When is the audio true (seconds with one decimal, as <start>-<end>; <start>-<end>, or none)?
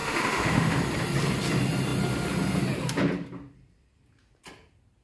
0.8-5.0